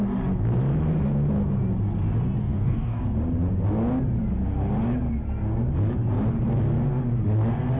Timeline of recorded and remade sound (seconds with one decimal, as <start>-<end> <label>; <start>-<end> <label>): 0.0-2.4 recorded; 2.4-3.0 remade; 3.0-7.8 recorded